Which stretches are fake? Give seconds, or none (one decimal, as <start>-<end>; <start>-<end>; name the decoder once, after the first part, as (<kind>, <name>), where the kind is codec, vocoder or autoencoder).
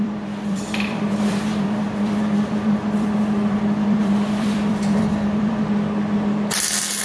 0.0-5.6 (vocoder, BigVGAN v2)